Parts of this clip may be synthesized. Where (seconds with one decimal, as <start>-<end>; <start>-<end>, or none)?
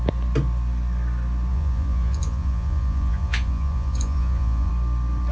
1.5-4.7